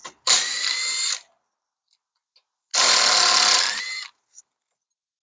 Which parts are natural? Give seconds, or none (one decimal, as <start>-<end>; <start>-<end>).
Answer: 0.0-5.4